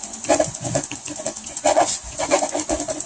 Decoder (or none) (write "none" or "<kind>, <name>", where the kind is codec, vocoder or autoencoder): vocoder, Vocos